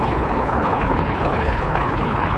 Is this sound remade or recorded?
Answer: remade